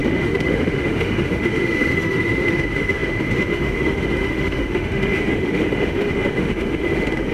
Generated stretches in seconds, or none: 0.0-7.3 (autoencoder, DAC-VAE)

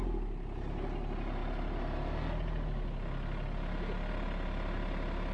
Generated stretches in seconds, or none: none

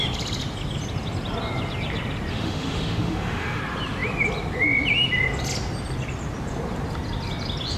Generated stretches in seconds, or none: 2.3-3.6 (autoencoder, DAC-VAE)

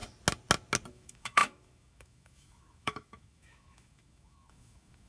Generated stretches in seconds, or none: 0.9-5.1 (autoencoder, DAC-VAE)

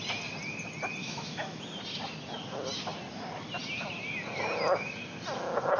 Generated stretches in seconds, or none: 1.0-1.6 (autoencoder, DAC-VAE)